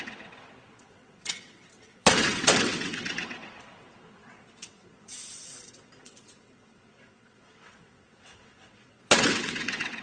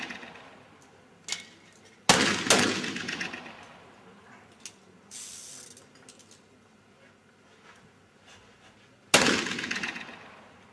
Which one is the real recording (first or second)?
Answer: second